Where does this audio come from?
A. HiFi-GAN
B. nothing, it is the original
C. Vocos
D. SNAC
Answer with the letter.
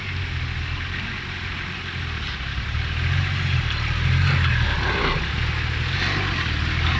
B